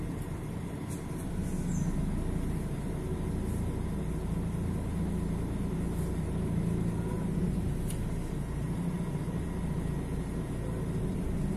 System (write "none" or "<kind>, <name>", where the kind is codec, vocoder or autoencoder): none